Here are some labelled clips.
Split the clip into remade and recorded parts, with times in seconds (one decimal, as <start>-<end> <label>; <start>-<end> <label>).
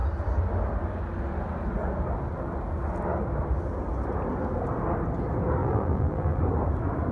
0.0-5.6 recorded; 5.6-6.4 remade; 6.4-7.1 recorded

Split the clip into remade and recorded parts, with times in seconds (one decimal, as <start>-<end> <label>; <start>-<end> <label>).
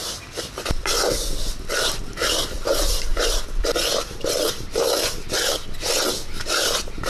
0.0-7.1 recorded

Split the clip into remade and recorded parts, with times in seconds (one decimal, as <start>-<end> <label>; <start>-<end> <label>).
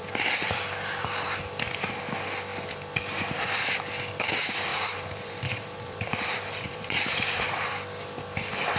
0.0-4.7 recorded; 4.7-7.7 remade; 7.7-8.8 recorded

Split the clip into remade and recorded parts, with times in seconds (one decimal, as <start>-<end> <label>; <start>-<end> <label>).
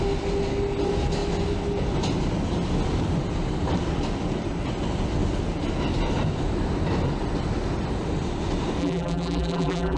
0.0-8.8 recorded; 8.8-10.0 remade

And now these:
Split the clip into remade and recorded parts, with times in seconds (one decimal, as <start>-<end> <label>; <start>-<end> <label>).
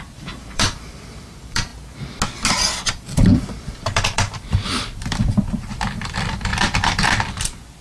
0.0-1.7 remade; 1.7-2.8 recorded; 2.8-7.8 remade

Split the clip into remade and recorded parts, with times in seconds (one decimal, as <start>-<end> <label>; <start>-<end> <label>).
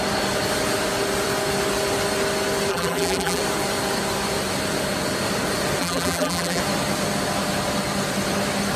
0.0-2.7 recorded; 2.7-3.4 remade; 3.4-5.8 recorded; 5.8-6.6 remade; 6.6-8.8 recorded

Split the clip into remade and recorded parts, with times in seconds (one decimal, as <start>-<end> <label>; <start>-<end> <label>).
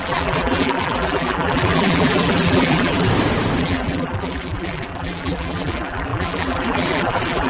0.0-3.1 remade; 3.1-3.6 recorded; 3.6-7.5 remade